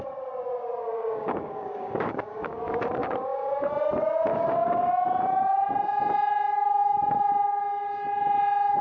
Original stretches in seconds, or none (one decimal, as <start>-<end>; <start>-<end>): 0.0-0.8; 2.6-3.0; 3.7-4.3; 4.9-8.8